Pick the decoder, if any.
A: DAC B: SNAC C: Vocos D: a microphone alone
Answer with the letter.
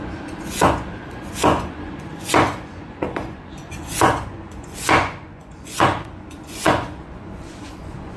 C